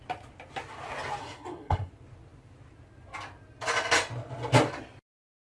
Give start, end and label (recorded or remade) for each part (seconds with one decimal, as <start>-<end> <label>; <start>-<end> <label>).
0.0-1.2 recorded; 1.2-1.9 remade; 1.9-5.5 recorded